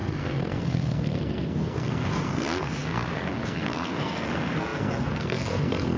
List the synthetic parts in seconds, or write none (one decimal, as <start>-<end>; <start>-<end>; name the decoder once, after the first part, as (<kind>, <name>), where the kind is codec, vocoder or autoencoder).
0.0-6.0 (codec, SNAC)